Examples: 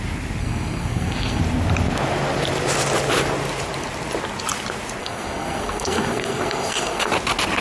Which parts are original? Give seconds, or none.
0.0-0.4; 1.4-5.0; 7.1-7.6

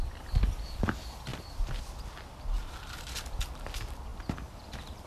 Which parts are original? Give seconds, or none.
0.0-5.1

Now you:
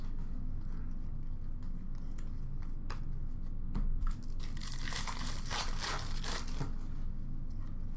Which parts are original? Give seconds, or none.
0.0-8.0

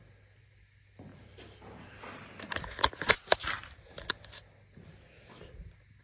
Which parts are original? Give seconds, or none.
0.0-1.1; 3.2-3.6; 4.1-6.0

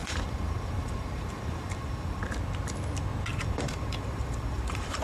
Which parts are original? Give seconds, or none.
2.2-3.3

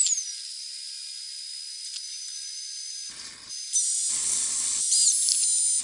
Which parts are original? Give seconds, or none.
0.0-3.1; 3.5-4.1; 4.8-5.8

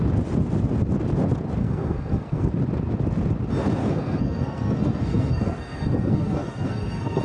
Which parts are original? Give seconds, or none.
0.0-1.6; 2.5-3.8